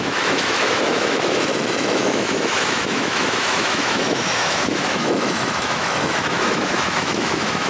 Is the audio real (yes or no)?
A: no